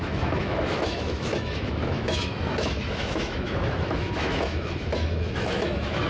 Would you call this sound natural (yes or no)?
no